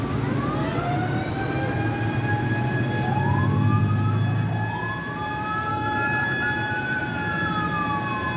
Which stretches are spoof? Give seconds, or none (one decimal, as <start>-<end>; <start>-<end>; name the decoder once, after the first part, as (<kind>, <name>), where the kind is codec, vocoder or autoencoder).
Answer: 5.7-7.0 (autoencoder, DAC-VAE)